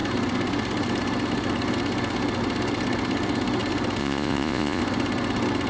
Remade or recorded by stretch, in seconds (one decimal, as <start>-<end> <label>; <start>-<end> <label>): 0.0-4.0 recorded; 4.0-4.8 remade; 4.8-5.7 recorded